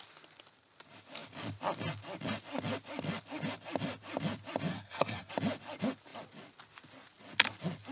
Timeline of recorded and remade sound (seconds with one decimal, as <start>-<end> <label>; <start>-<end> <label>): 0.0-4.7 recorded; 4.7-5.3 remade; 5.3-7.9 recorded